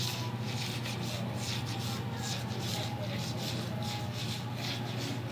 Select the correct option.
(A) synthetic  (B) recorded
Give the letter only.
B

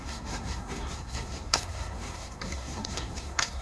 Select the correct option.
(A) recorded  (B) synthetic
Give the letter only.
B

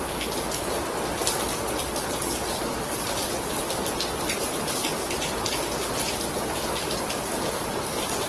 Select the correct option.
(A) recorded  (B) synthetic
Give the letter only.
A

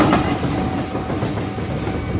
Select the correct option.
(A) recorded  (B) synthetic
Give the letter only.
A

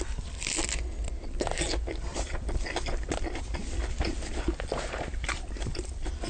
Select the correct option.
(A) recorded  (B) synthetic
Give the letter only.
A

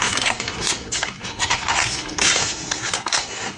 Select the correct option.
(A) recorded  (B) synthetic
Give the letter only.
B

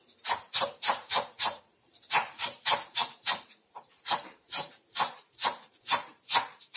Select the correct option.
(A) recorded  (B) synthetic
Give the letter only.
B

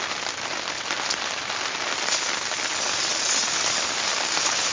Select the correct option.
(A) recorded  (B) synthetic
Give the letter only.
A